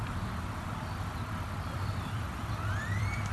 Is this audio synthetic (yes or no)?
yes